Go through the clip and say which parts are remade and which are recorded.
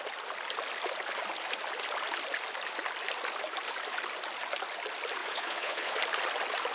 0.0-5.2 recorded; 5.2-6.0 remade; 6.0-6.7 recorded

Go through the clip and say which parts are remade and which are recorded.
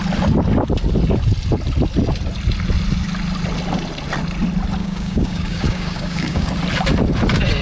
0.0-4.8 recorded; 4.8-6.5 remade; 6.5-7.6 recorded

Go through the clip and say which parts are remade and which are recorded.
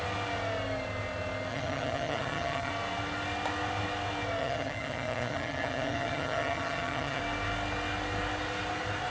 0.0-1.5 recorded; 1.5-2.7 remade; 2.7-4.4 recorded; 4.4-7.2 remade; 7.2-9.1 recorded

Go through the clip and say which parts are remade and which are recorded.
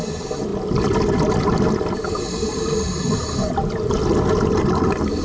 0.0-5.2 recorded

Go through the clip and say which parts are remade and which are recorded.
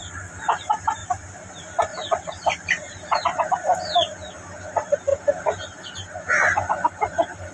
0.0-1.0 recorded; 1.0-1.5 remade; 1.5-1.9 recorded; 1.9-3.9 remade; 3.9-7.5 recorded